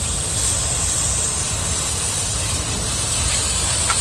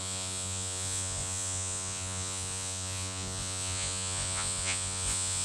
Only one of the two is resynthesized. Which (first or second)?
second